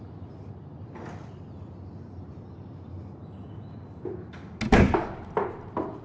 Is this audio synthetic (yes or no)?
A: no